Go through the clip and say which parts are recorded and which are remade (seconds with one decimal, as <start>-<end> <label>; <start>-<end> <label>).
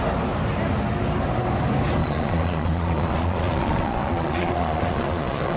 0.0-2.0 recorded; 2.0-5.6 remade